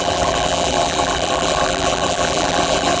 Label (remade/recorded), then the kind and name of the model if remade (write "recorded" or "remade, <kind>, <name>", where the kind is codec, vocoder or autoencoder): remade, vocoder, BigVGAN v2